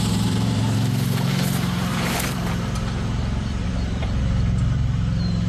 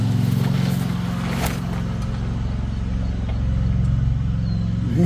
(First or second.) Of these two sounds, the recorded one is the second